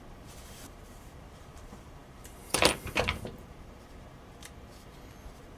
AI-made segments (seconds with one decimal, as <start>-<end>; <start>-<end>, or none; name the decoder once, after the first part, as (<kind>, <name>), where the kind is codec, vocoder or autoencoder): 0.0-5.6 (vocoder, BigVGAN v2)